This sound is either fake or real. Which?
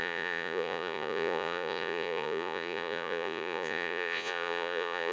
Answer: fake